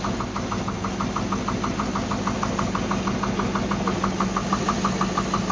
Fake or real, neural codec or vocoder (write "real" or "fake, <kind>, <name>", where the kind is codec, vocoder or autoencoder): real